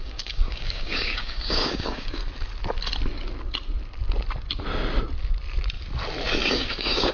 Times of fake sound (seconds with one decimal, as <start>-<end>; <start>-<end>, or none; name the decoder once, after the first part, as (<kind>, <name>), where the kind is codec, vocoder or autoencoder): 0.0-2.2 (codec, DAC); 6.5-7.1